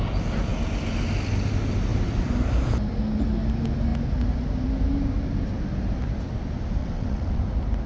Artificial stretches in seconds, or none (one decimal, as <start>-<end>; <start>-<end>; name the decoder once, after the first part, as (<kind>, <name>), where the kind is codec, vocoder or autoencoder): 6.8-7.4 (vocoder, WaveNeXt)